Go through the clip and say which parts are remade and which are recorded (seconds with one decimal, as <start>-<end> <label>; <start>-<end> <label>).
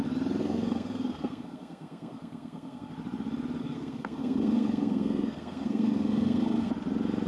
0.0-0.4 recorded; 0.4-2.9 remade; 2.9-3.6 recorded; 3.6-6.7 remade; 6.7-7.3 recorded